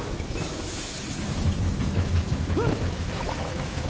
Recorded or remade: remade